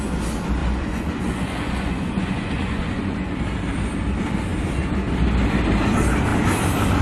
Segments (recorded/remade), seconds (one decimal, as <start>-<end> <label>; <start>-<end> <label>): 0.0-0.6 recorded; 0.6-3.4 remade; 3.4-7.0 recorded